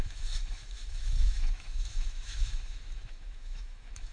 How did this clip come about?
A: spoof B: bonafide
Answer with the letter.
A